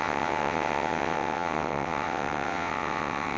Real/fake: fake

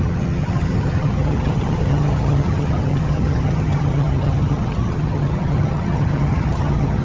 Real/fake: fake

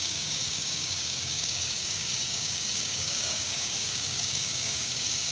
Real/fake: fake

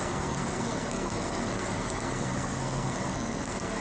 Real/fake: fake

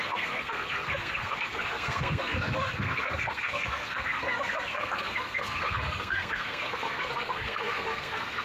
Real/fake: fake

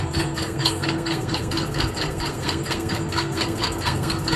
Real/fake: fake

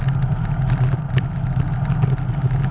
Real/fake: real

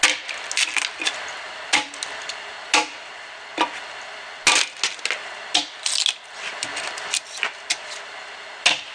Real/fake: real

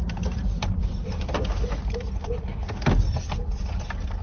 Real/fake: real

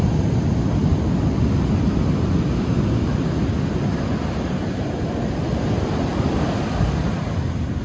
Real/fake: real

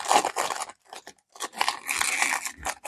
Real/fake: real